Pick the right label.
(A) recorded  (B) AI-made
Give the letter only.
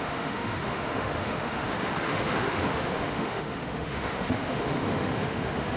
B